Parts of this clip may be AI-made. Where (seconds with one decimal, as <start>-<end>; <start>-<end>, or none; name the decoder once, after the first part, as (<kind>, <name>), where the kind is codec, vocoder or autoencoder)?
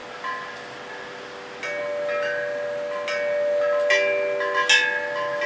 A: none